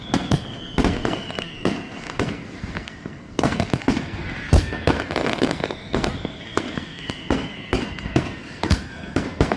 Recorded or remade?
remade